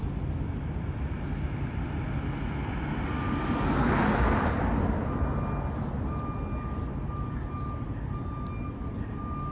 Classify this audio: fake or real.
real